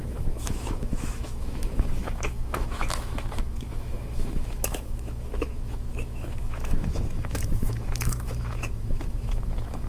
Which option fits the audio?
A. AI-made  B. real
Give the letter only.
A